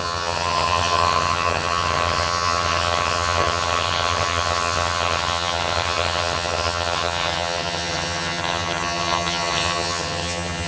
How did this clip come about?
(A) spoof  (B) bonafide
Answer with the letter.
A